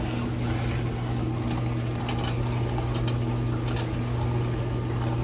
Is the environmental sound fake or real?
real